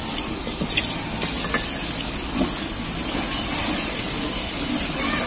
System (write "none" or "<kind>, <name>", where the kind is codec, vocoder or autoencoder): none